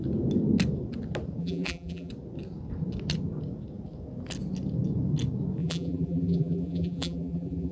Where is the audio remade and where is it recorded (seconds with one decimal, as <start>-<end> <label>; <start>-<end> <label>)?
0.0-1.4 recorded; 1.4-2.1 remade; 2.1-5.6 recorded; 5.6-7.7 remade